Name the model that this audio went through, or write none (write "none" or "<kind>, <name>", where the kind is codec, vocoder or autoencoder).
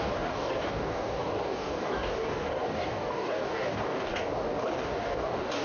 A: codec, DAC